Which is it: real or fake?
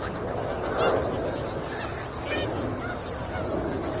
real